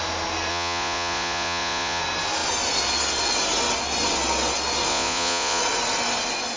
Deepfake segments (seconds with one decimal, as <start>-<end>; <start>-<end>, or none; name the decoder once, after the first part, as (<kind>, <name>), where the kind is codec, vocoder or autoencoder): 0.5-2.0 (vocoder, Vocos); 4.9-5.6